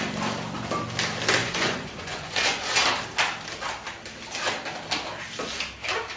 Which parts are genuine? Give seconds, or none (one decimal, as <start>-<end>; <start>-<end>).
0.0-1.4; 2.7-6.2